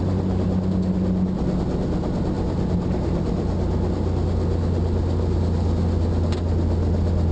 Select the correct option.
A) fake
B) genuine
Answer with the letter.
B